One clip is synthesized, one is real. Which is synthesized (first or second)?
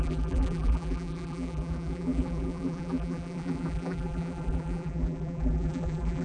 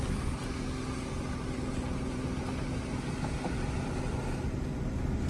first